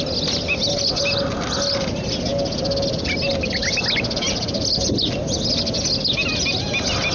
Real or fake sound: real